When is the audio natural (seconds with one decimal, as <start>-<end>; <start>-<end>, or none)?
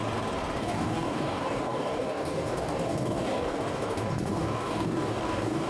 0.0-0.6